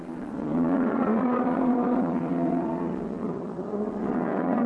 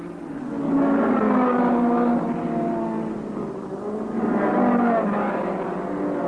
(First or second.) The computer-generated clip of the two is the first